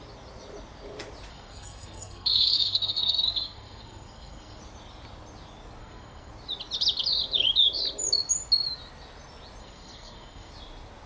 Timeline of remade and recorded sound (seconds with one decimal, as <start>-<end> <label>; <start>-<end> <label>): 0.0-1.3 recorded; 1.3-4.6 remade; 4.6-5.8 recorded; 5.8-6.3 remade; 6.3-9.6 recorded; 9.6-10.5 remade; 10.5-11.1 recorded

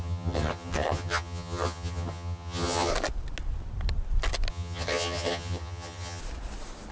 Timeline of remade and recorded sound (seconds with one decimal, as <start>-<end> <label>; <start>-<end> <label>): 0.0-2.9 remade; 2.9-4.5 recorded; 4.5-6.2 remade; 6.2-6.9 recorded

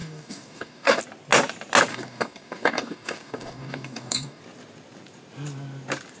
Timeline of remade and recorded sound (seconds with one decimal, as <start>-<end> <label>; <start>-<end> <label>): 0.0-1.0 remade; 1.0-1.9 recorded; 1.9-4.4 remade; 4.4-6.2 recorded